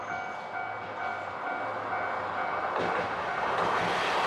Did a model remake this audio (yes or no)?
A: no